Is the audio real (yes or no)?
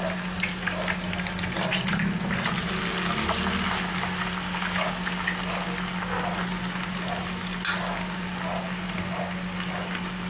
yes